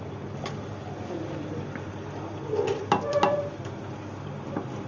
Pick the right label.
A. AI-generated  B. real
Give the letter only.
B